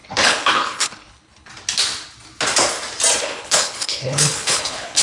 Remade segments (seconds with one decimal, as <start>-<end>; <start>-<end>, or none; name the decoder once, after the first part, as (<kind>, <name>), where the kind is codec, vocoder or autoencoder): 0.0-1.5 (codec, HILCodec); 3.2-5.0